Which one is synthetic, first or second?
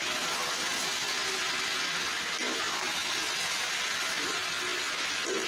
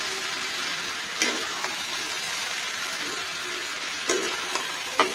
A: second